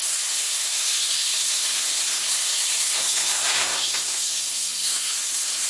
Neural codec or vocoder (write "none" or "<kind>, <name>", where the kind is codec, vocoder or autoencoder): codec, SNAC